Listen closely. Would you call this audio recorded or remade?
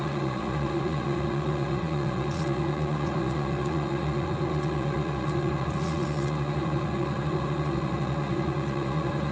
remade